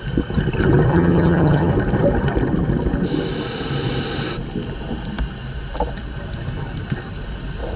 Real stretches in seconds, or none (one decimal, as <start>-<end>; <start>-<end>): 0.0-0.9; 1.7-7.8